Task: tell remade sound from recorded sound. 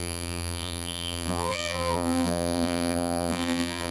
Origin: remade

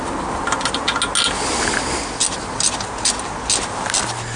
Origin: recorded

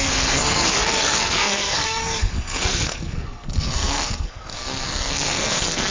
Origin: remade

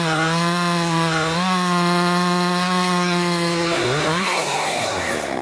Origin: remade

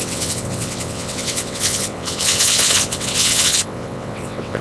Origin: remade